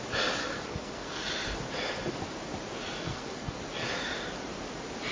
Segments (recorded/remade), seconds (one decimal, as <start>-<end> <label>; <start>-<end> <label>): 0.0-0.4 recorded; 0.4-1.3 remade; 1.3-3.0 recorded; 3.0-3.6 remade; 3.6-5.1 recorded